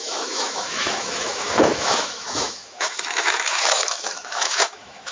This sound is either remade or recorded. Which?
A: remade